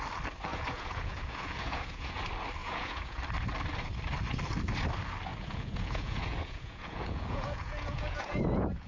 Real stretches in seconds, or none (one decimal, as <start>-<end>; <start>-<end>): 0.0-0.5; 2.2-2.6; 3.2-5.3